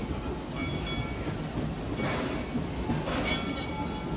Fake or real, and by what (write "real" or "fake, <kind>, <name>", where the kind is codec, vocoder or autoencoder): real